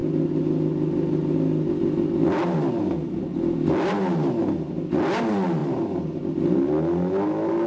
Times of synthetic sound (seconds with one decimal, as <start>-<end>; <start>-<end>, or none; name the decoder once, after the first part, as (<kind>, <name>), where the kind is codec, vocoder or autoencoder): none